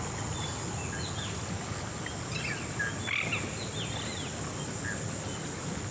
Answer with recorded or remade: recorded